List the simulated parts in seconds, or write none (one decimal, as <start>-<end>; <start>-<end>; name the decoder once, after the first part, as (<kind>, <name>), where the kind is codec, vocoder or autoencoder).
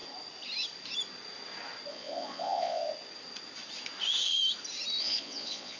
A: 1.9-2.8 (vocoder, Vocos); 5.0-5.8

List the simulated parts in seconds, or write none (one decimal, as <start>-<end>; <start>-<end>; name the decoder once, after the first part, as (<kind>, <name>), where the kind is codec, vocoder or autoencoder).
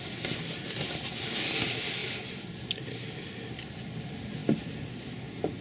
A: none